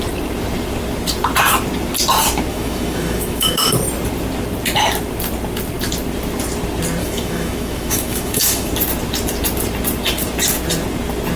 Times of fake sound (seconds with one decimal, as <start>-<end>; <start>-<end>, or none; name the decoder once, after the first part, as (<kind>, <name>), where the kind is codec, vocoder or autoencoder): 2.5-3.7 (autoencoder, DAC-VAE); 7.0-8.7